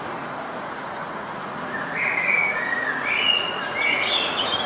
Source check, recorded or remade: remade